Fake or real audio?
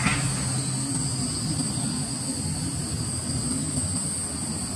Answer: real